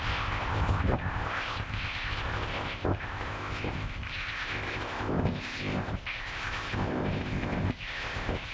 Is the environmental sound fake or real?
fake